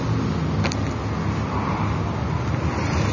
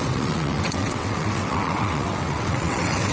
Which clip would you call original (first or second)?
first